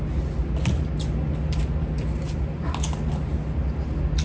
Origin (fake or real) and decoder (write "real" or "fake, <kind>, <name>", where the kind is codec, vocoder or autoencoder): real